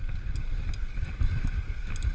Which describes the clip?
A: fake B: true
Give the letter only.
B